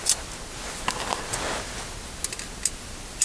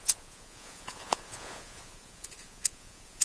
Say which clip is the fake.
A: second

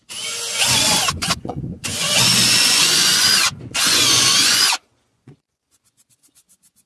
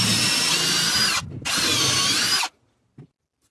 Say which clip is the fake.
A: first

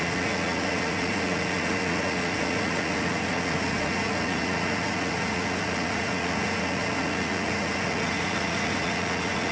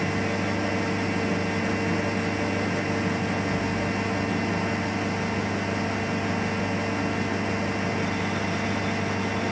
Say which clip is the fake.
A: first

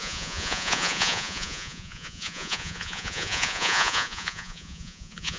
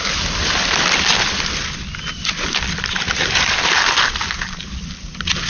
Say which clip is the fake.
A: first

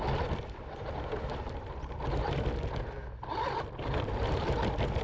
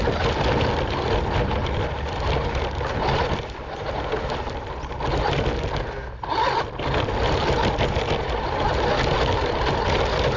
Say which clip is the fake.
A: first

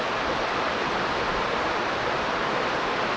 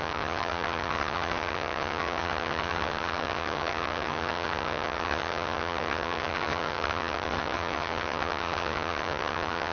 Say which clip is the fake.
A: second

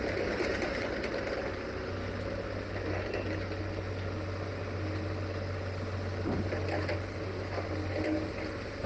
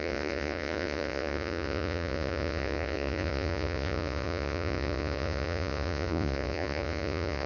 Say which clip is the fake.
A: second